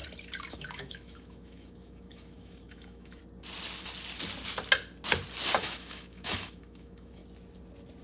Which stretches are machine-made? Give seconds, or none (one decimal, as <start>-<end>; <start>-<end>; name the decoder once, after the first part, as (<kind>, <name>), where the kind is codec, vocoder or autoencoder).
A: 0.5-3.2 (autoencoder, DAC-VAE); 5.6-7.2